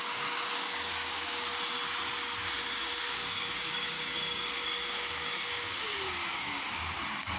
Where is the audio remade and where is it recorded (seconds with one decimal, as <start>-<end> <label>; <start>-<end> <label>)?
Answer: 0.0-1.5 remade; 1.5-2.6 recorded; 2.6-7.4 remade